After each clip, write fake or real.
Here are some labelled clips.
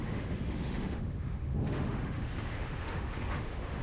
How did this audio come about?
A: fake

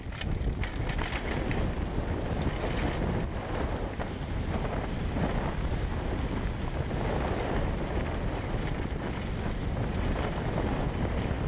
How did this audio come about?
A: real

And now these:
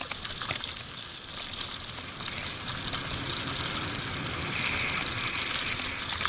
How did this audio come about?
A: real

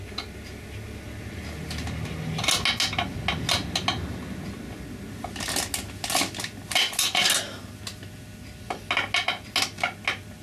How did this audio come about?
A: real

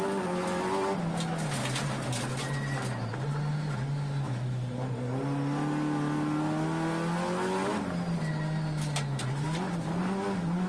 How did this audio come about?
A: real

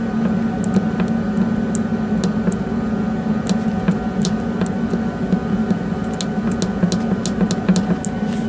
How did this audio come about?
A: real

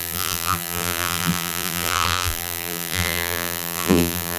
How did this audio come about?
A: fake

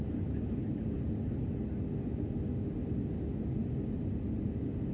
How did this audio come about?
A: real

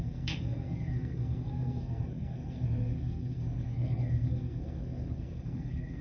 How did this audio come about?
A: fake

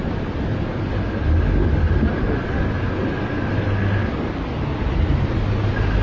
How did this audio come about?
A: real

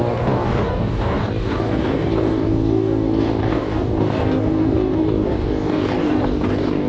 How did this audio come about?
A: fake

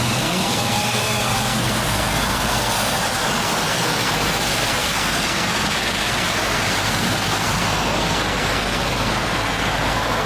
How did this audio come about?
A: fake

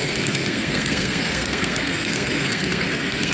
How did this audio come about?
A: fake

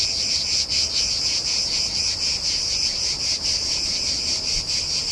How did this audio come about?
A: real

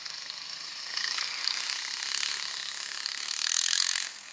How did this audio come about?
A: fake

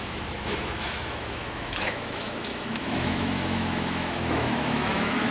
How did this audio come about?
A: fake